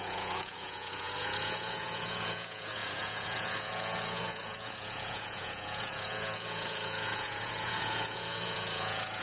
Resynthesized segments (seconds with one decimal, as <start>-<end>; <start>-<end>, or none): 0.0-9.2